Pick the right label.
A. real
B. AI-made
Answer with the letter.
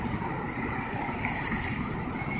A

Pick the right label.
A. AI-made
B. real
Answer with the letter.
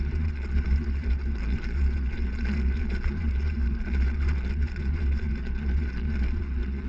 A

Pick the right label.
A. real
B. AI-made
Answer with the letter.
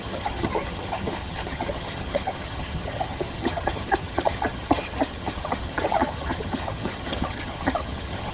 B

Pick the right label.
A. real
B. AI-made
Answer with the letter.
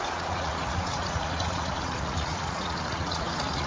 B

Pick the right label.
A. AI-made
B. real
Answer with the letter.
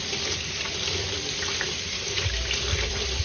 A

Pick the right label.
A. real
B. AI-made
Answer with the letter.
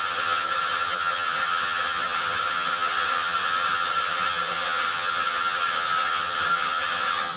B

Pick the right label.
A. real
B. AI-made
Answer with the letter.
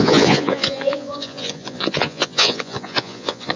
B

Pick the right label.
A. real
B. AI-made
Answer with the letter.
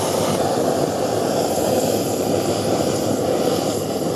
B